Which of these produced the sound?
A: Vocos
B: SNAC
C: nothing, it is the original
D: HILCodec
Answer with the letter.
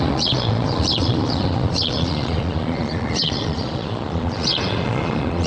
A